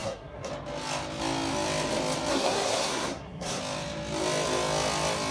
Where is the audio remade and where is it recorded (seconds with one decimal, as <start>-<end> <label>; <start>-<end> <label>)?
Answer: 0.0-0.5 remade; 0.5-2.3 recorded; 2.3-3.6 remade; 3.6-5.3 recorded